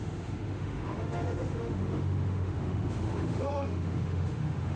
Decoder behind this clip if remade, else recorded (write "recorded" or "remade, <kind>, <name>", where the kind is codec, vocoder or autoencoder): remade, autoencoder, DAC-VAE